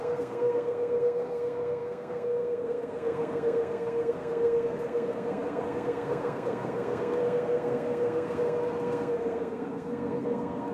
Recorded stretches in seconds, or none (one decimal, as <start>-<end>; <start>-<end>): none